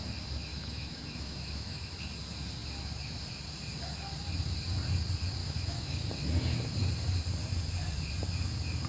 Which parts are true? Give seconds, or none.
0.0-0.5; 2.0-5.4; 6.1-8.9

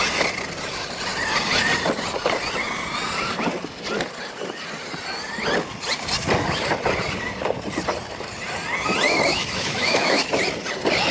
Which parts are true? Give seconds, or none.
0.0-9.3; 10.2-11.1

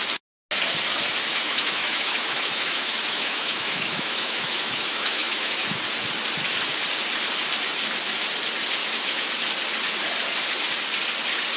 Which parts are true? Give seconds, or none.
0.0-1.3; 5.8-8.8; 9.3-11.6

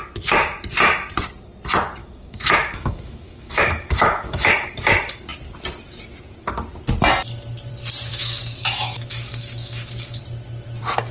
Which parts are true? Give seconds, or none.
0.0-2.0; 4.5-8.1; 10.2-11.1

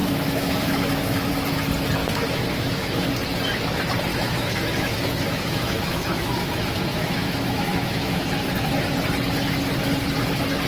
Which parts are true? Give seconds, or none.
1.3-2.0; 3.1-4.1; 8.2-10.7

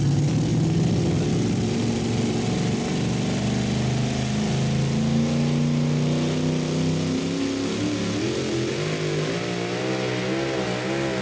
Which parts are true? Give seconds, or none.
0.0-11.2